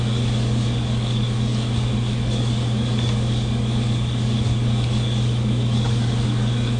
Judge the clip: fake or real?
fake